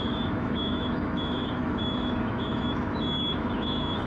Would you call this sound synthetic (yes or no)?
yes